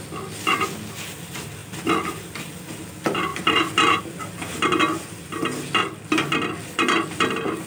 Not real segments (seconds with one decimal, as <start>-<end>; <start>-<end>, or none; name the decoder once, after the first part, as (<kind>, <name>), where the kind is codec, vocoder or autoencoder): 3.3-4.0 (vocoder, BigVGAN v2)